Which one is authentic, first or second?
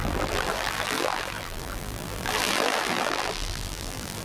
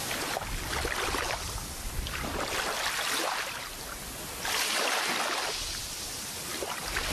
second